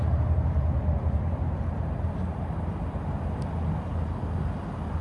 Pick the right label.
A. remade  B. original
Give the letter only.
B